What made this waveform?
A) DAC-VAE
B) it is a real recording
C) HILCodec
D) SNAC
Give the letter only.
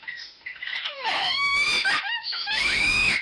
A